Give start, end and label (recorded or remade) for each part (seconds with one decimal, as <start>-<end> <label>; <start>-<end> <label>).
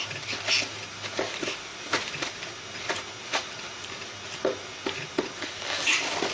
0.0-6.3 recorded